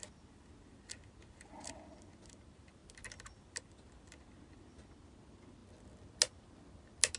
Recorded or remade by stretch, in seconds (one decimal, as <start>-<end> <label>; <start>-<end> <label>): 0.0-7.2 recorded